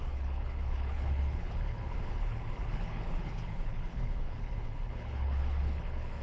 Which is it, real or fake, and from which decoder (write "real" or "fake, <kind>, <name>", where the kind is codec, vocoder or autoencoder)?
fake, codec, HILCodec